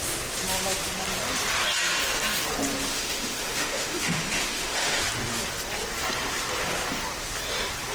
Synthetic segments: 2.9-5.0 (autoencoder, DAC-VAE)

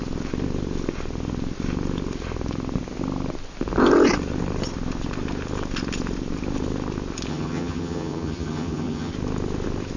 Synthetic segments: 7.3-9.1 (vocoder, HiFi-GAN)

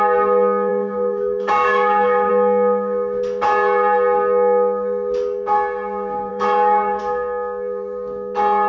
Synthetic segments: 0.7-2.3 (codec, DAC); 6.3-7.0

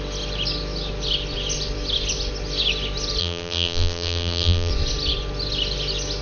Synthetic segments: 3.2-4.7 (vocoder, BigVGAN v2)

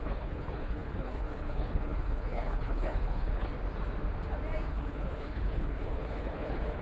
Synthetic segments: 0.0-3.5 (codec, HILCodec); 4.7-6.8